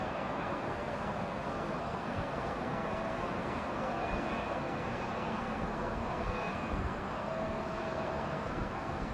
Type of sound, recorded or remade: remade